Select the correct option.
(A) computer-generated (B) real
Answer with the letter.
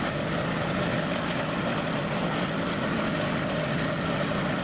B